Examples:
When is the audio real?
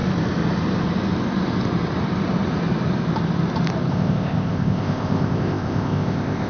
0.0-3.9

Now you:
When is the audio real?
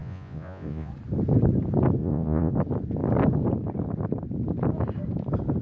0.9-2.0; 2.5-5.6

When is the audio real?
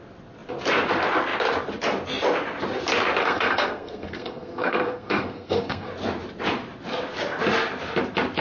0.0-3.2; 5.9-8.4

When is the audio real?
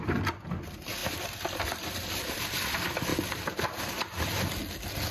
0.0-1.0; 2.4-3.1; 4.4-5.1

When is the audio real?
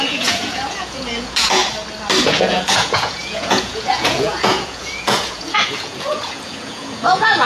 1.6-2.2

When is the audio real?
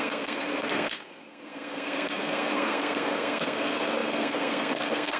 none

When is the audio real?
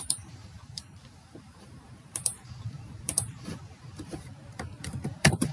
none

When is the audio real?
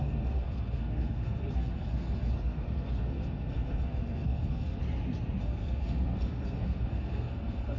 4.8-5.4